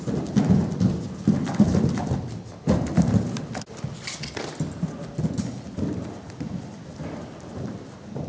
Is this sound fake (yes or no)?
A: no